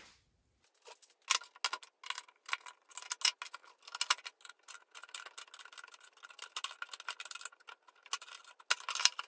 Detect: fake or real real